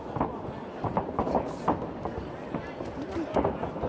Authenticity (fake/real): fake